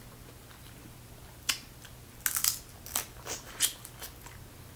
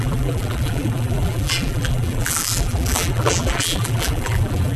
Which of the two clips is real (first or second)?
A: first